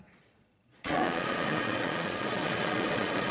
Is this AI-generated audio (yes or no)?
yes